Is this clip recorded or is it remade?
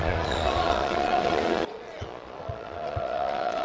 remade